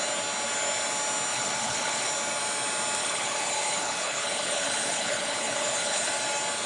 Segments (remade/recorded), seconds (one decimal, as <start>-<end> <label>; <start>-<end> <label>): 0.0-1.3 recorded; 1.3-2.1 remade; 2.1-3.0 recorded; 3.0-6.1 remade; 6.1-6.7 recorded